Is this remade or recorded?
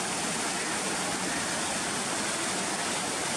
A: recorded